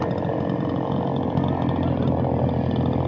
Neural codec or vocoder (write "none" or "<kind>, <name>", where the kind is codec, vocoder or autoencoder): none